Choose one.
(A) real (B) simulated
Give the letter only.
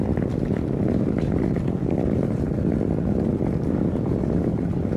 A